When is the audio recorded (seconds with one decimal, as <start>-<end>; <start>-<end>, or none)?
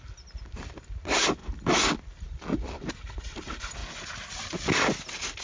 0.0-5.4